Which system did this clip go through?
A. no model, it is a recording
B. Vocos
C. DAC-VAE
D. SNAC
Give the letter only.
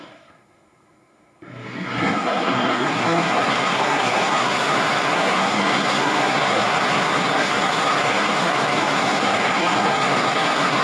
D